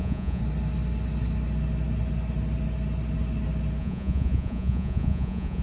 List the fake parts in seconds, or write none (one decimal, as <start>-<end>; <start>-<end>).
0.0-0.4; 3.8-5.6